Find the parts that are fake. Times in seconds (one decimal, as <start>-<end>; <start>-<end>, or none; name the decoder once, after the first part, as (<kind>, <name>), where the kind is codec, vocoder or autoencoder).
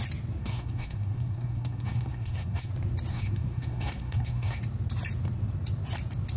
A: 0.4-2.7 (codec, SNAC); 3.1-4.6